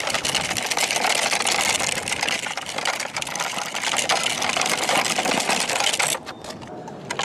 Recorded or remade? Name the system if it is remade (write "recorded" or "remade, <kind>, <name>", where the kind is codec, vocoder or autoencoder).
recorded